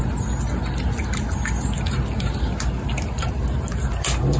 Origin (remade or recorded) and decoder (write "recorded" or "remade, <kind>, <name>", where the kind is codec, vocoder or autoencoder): recorded